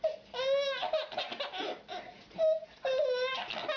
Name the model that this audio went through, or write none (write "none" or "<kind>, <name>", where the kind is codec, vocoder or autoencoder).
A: none